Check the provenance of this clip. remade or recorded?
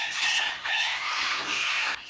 remade